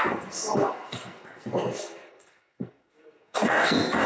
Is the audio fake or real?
fake